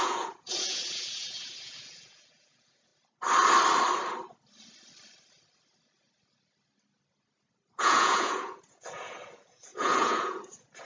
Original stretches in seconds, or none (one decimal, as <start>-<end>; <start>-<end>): 2.9-7.8